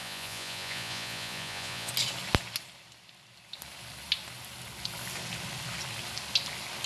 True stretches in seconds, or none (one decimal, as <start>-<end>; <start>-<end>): 1.9-6.9